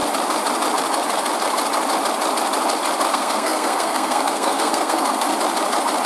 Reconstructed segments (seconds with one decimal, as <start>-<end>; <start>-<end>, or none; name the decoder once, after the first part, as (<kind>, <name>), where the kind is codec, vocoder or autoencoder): 3.1-5.3 (codec, SNAC)